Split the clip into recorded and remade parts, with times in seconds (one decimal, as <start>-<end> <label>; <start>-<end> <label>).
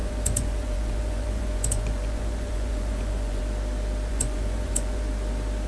0.0-3.4 remade; 3.4-4.1 recorded; 4.1-5.0 remade; 5.0-5.7 recorded